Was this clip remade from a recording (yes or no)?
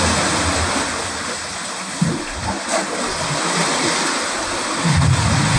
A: no